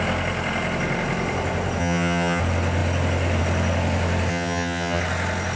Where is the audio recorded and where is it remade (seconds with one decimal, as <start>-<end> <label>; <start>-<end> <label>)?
0.0-1.8 recorded; 1.8-2.4 remade; 2.4-4.3 recorded; 4.3-5.0 remade; 5.0-5.6 recorded